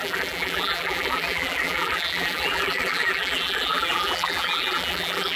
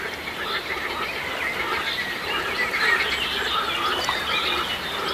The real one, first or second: second